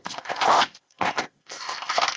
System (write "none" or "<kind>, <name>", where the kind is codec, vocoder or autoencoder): codec, ZipCodec